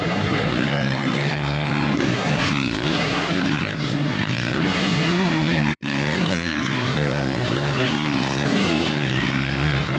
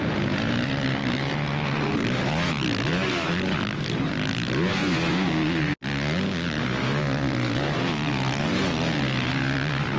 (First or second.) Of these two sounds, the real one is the second